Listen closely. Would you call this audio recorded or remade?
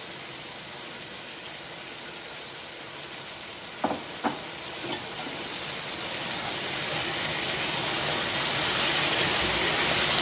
recorded